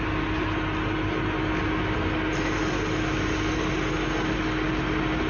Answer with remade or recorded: recorded